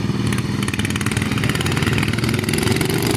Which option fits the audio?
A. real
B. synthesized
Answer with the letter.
A